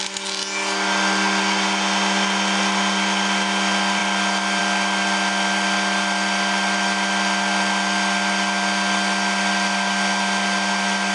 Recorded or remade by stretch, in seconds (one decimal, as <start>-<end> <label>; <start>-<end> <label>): 0.0-11.1 recorded